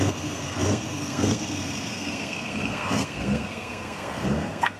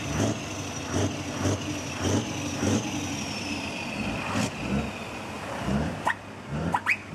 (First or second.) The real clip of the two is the second